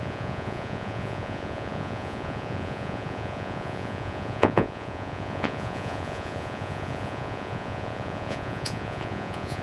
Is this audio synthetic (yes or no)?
yes